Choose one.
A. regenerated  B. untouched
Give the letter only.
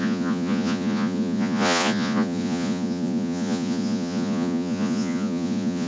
A